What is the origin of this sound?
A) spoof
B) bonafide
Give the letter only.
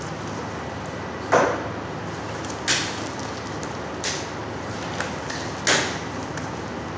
B